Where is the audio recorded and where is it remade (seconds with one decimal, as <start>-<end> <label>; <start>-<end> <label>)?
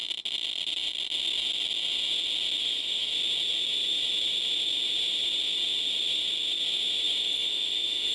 0.0-2.6 recorded; 2.6-3.1 remade; 3.1-7.2 recorded; 7.2-8.1 remade